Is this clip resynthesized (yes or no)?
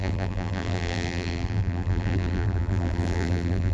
yes